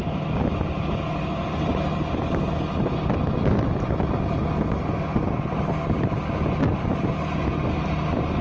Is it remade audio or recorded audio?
recorded